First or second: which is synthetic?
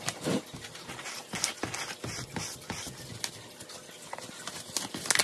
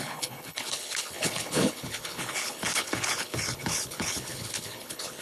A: second